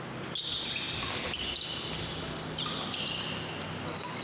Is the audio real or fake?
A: real